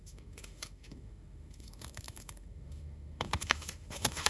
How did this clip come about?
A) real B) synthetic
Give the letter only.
B